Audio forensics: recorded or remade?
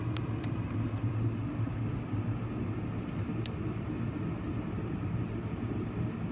recorded